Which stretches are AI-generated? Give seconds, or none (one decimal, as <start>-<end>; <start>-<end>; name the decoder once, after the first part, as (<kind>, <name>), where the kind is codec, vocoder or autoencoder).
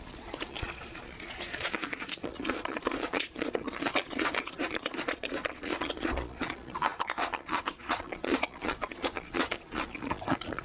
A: 0.0-10.6 (vocoder, Vocos)